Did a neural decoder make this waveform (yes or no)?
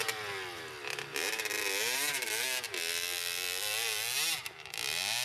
no